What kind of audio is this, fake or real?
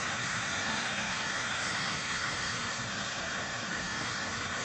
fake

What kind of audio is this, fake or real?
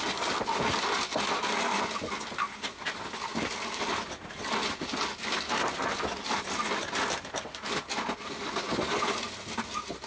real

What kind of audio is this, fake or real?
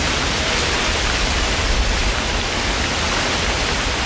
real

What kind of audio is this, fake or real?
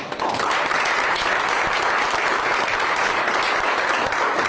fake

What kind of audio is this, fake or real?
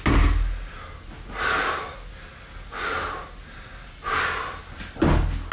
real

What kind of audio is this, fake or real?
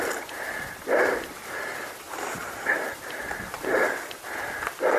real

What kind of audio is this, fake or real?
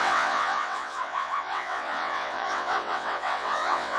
fake